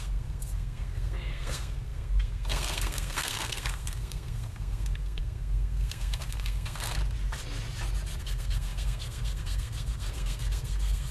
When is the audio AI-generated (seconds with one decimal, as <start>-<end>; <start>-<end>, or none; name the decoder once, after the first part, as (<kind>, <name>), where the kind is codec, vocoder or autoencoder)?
0.0-7.0 (codec, SNAC); 8.2-11.1